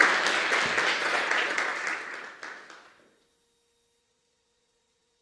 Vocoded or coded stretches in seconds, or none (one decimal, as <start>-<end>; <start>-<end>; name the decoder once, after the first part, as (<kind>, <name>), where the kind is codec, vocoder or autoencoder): 1.0-1.7 (vocoder, Vocos); 4.0-5.2